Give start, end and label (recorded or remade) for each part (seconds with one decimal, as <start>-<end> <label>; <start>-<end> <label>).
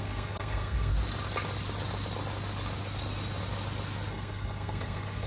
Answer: 0.0-0.9 remade; 0.9-4.1 recorded; 4.1-5.3 remade